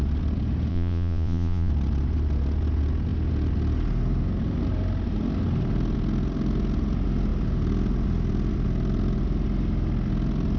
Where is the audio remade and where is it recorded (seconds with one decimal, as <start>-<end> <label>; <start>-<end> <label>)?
0.0-0.7 recorded; 0.7-1.7 remade; 1.7-10.6 recorded